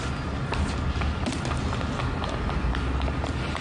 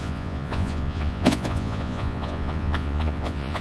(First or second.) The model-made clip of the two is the second